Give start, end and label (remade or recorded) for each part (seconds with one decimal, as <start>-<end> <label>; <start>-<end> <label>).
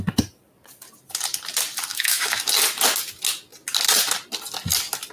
0.0-1.9 recorded; 1.9-2.4 remade; 2.4-5.1 recorded